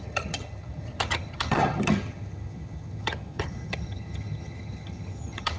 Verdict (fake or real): fake